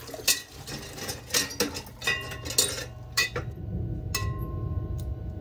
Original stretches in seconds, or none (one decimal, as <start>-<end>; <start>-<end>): 0.0-2.8; 3.6-5.4